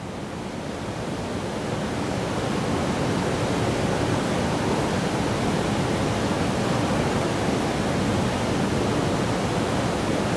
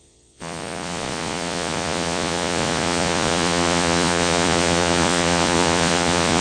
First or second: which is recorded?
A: first